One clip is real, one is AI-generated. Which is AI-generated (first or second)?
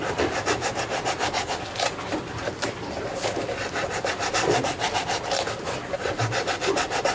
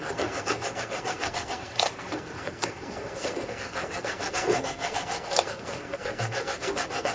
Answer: second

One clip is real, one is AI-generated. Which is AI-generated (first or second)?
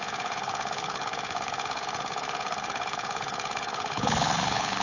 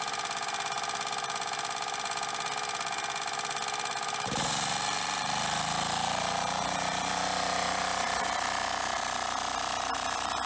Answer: first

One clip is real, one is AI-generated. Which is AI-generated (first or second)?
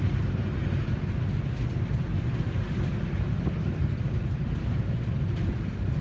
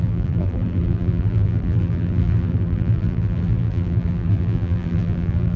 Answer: second